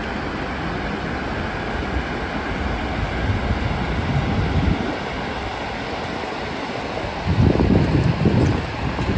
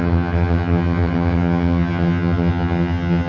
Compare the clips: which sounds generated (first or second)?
second